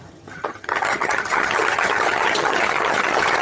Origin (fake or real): fake